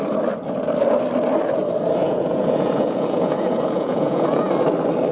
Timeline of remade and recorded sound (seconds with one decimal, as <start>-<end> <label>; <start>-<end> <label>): 0.0-2.0 recorded; 2.0-4.5 remade; 4.5-5.1 recorded